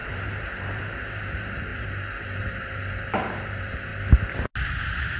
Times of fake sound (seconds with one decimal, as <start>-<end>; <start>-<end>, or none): 0.0-3.9; 4.8-5.2